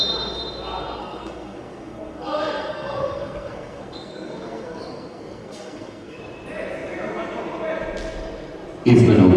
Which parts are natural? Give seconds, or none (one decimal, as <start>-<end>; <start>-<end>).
0.0-1.0; 6.2-9.4